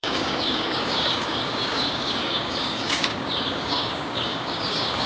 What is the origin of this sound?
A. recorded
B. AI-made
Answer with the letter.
B